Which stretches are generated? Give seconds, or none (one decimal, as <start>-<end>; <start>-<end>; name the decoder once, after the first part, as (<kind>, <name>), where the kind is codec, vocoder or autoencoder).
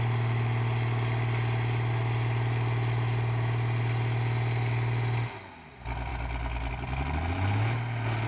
none